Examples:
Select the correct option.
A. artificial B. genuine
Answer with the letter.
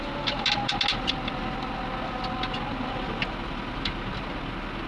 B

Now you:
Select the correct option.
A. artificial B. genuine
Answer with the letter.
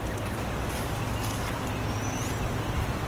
B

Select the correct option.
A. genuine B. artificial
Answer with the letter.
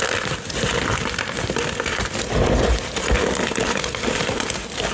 B